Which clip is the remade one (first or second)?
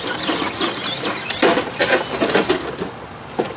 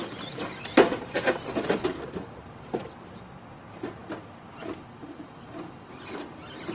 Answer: second